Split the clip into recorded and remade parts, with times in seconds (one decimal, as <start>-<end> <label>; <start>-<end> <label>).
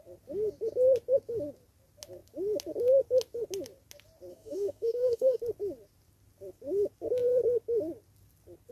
0.0-4.3 recorded; 4.3-5.4 remade; 5.4-8.7 recorded